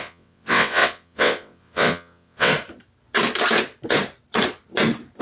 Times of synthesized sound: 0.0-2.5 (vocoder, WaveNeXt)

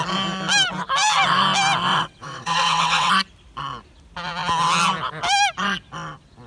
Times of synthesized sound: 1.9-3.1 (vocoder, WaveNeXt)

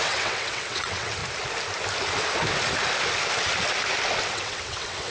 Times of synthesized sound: 0.0-1.2 (vocoder, WaveNeXt); 4.3-5.1

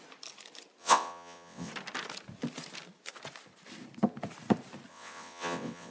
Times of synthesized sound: 0.8-1.7 (vocoder, WaveNeXt); 4.9-5.9

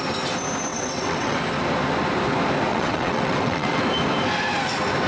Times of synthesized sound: 0.7-1.4 (vocoder, WaveNeXt); 2.7-3.8

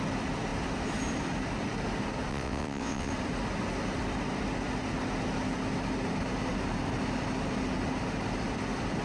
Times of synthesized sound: 2.3-3.1 (vocoder, WaveNeXt)

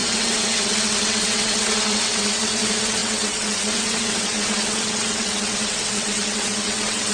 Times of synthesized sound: 0.0-7.1 (vocoder, WaveNeXt)